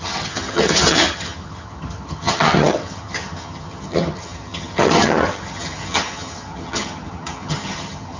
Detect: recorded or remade remade